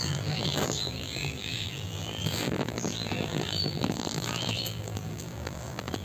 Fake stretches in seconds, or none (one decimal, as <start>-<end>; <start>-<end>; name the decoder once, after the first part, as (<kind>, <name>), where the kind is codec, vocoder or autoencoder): 0.0-6.0 (vocoder, BigVGAN v2)

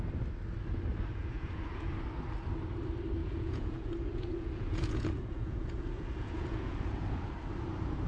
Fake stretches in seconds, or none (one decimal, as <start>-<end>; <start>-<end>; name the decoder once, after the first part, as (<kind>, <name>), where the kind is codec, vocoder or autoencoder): 1.1-1.9 (vocoder, Vocos); 3.2-7.3